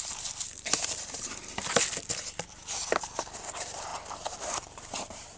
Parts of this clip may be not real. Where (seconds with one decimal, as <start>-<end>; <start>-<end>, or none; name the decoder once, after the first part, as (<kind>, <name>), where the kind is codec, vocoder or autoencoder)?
0.0-1.6 (vocoder, BigVGAN v2); 3.5-3.9; 4.4-5.4